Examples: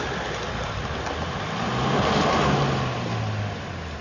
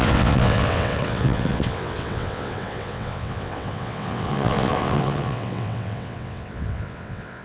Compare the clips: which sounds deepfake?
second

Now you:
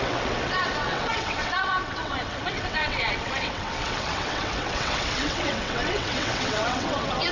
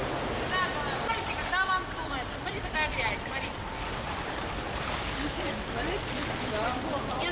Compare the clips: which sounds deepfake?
first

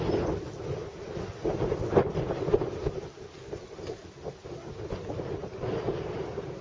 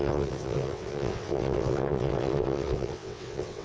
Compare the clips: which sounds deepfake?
second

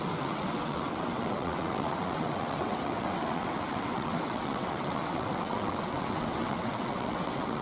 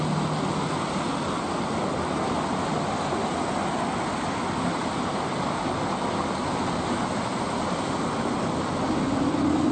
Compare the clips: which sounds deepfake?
first